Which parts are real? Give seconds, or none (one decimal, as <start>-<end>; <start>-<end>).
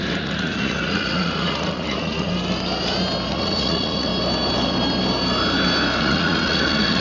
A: 2.3-3.3; 4.1-6.0